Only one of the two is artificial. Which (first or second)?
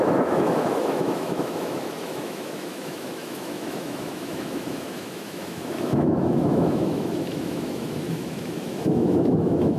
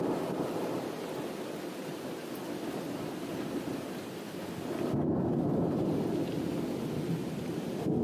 first